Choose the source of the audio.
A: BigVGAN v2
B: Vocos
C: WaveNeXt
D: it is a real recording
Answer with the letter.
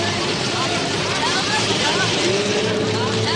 A